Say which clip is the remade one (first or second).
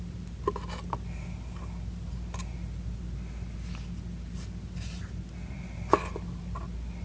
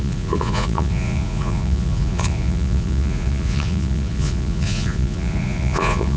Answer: second